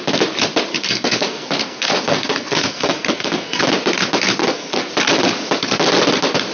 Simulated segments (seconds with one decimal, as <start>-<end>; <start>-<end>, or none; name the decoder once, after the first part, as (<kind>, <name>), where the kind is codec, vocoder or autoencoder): 0.7-3.6 (codec, SNAC); 4.4-4.9